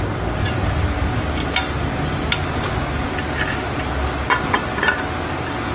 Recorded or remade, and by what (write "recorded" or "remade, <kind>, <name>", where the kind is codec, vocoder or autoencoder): recorded